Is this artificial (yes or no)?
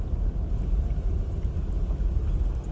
no